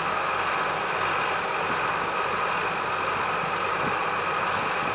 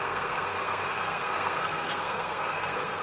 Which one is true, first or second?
first